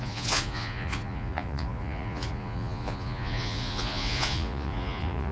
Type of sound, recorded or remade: remade